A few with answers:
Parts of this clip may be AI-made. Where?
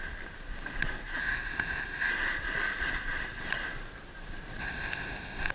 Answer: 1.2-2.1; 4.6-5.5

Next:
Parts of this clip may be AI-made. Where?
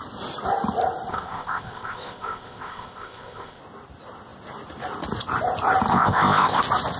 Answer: 1.1-3.6; 5.9-6.6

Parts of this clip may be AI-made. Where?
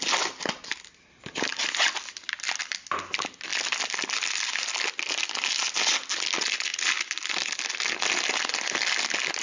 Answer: none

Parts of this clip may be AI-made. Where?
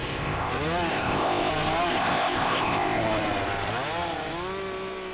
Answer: 0.0-0.5; 0.9-1.5; 1.9-3.0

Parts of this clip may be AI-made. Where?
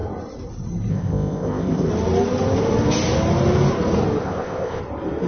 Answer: 0.9-1.9; 4.2-4.8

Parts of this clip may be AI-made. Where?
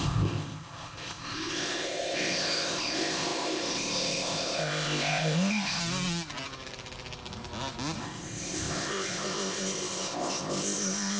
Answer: 0.0-5.8; 8.0-11.2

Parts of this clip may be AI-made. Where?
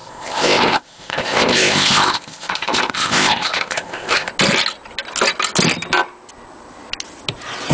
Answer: 0.0-4.3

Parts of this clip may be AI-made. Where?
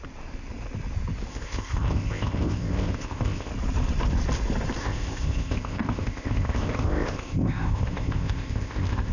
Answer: 1.3-3.5; 4.8-9.1